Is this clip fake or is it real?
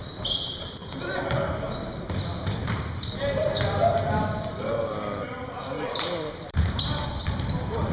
fake